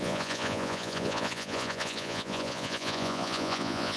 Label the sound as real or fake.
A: fake